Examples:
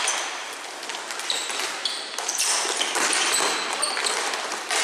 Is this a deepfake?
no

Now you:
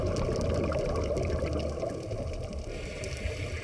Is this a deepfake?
no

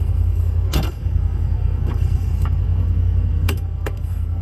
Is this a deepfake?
yes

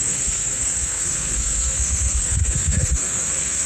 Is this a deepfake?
yes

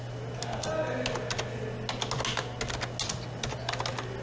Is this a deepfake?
no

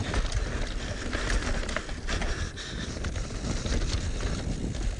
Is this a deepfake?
no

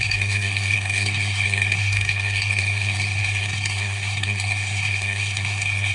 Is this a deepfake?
yes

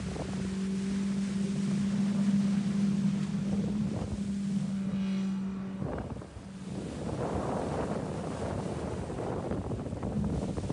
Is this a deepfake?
no